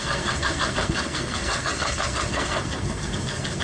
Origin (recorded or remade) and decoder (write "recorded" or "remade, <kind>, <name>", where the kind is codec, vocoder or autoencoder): remade, codec, SNAC